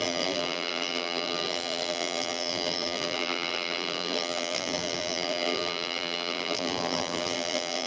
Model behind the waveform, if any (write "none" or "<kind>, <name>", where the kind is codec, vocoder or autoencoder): vocoder, BigVGAN v2